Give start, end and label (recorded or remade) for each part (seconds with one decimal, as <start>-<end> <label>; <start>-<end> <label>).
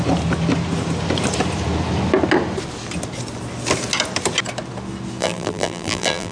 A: 0.0-5.2 recorded; 5.2-6.3 remade